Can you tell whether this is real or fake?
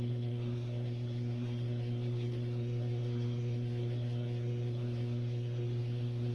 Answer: fake